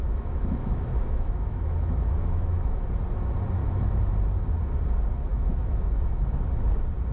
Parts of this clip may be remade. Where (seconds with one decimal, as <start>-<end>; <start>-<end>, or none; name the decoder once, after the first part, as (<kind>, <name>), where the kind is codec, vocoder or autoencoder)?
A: 0.0-2.8 (autoencoder, DAC-VAE); 3.6-4.1; 5.3-5.9